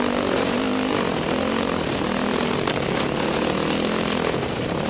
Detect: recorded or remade recorded